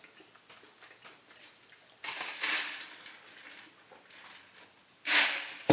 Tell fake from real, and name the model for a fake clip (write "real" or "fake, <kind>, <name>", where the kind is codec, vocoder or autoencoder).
real